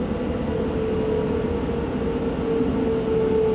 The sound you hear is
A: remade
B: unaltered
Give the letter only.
B